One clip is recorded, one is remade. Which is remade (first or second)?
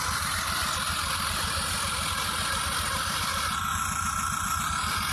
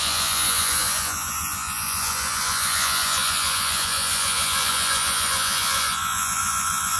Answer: second